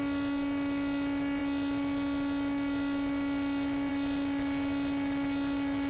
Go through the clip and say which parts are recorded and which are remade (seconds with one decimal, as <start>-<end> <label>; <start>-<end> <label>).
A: 0.0-5.9 recorded